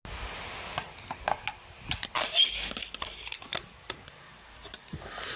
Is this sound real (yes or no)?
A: yes